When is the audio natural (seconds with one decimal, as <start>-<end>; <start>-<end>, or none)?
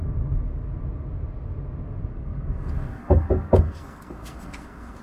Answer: 0.0-2.1